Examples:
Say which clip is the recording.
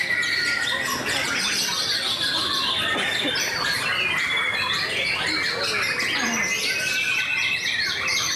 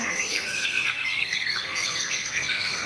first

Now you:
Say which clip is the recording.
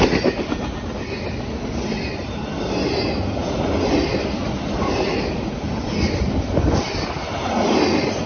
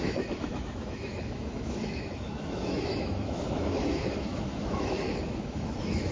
first